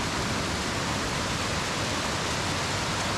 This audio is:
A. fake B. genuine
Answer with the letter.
B